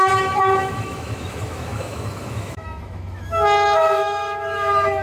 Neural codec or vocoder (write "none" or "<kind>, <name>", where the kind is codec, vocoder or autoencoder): autoencoder, DAC-VAE